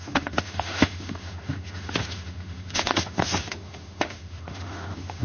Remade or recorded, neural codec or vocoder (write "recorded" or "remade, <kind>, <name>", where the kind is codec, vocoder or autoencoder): remade, autoencoder, DAC-VAE